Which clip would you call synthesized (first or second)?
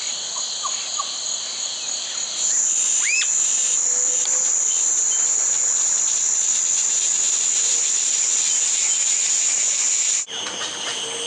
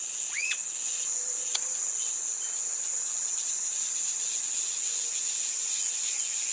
second